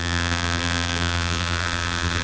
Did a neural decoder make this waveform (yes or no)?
yes